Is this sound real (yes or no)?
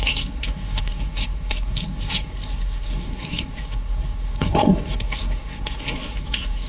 no